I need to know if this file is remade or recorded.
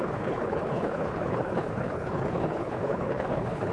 remade